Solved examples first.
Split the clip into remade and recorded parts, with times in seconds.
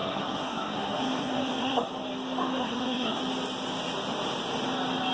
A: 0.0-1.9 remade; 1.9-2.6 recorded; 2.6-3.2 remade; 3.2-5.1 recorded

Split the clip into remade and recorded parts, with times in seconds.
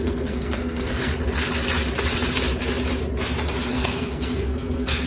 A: 0.0-1.2 remade; 1.2-3.7 recorded; 3.7-5.1 remade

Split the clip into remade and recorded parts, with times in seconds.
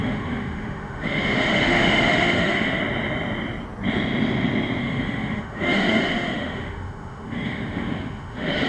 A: 0.0-2.8 remade; 2.8-4.8 recorded; 4.8-8.7 remade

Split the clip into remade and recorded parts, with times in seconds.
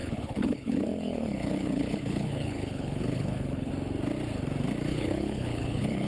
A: 0.0-3.7 remade; 3.7-4.9 recorded; 4.9-6.1 remade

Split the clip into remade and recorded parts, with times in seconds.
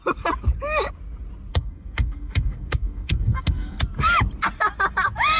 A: 0.0-1.5 recorded; 1.5-3.8 remade; 3.8-5.4 recorded